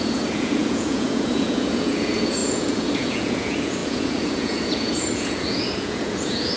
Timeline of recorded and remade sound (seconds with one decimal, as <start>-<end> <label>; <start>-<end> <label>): 0.0-6.6 remade